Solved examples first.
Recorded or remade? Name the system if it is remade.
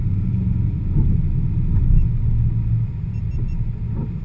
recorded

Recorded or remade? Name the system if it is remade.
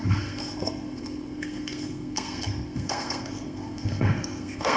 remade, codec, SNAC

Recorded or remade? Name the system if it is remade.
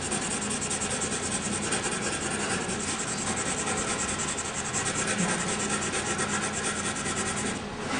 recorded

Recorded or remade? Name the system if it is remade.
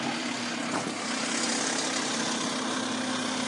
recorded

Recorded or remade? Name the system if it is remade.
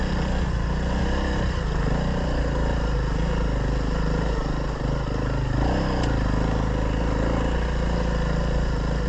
recorded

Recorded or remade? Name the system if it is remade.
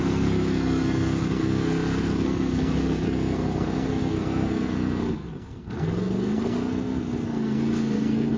remade, codec, SNAC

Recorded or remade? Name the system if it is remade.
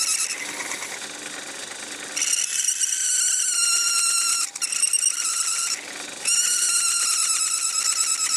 recorded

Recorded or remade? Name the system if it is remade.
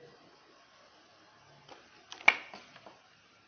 recorded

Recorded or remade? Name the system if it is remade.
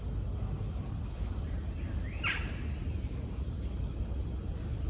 recorded